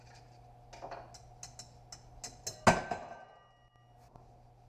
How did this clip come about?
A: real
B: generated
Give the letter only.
A